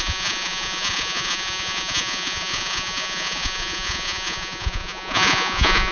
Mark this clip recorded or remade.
remade